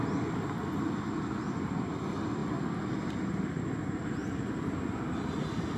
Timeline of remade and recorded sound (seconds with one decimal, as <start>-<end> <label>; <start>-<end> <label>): 0.0-5.8 recorded